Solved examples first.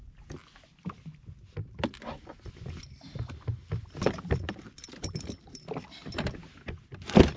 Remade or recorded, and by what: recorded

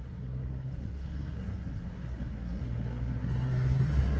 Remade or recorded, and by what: remade, codec, SNAC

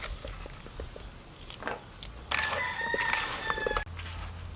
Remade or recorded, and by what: recorded